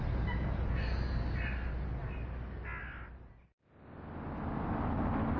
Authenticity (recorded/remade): recorded